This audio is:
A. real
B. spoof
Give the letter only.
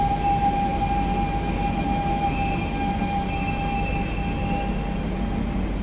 A